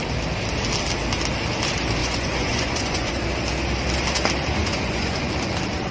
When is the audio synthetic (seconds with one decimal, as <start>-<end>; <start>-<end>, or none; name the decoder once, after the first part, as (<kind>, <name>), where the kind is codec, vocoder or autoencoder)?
2.0-3.1 (vocoder, Vocos); 4.6-5.2